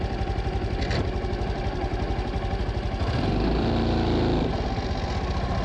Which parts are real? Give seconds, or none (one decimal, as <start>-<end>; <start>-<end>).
0.0-5.6